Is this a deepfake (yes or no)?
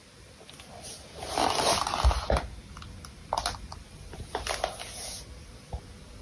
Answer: no